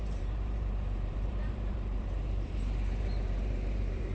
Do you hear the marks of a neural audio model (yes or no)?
yes